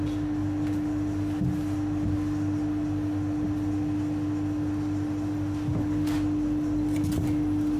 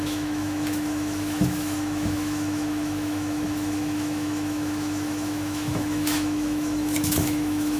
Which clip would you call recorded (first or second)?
first